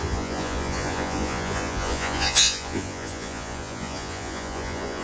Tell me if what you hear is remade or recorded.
remade